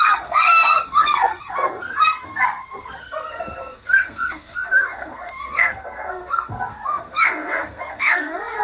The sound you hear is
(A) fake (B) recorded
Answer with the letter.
A